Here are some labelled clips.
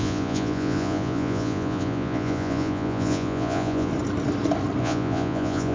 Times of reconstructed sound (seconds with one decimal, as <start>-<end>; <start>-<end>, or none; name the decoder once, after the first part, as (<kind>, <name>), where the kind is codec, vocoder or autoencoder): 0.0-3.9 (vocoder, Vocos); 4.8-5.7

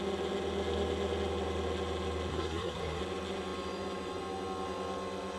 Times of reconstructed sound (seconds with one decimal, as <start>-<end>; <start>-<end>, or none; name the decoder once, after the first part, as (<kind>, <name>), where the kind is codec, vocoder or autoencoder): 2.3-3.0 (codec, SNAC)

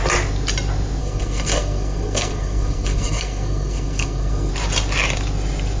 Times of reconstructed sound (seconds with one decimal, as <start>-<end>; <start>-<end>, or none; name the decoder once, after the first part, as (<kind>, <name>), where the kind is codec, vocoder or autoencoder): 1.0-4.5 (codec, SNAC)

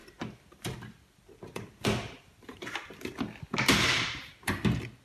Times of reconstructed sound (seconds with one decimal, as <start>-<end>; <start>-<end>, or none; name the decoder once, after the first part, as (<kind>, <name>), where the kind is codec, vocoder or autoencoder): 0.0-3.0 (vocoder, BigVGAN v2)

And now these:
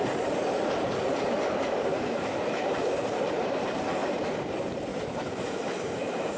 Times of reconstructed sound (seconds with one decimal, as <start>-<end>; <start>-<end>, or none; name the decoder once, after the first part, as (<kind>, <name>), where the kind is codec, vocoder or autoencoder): 1.9-2.8 (autoencoder, DAC-VAE); 4.9-6.4